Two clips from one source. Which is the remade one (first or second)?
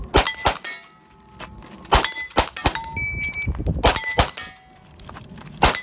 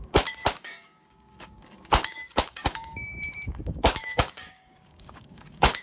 second